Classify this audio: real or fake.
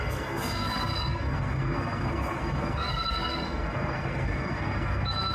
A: fake